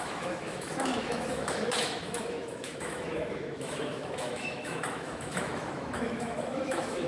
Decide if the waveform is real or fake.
fake